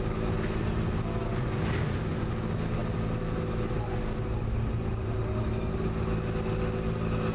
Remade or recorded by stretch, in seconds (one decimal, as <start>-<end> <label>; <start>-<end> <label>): 0.0-7.3 recorded